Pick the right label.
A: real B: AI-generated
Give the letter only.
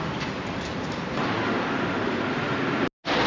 A